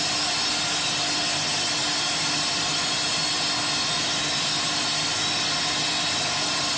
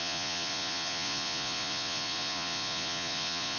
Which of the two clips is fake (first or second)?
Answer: second